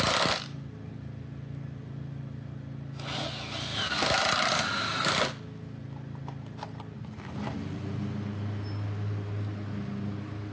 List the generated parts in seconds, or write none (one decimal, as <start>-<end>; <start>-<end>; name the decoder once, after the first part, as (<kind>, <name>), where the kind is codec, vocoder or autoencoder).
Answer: none